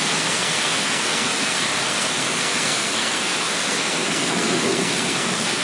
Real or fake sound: fake